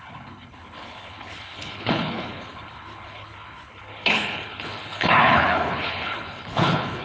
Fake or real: fake